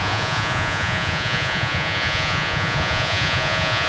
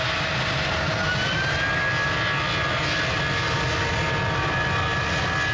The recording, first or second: second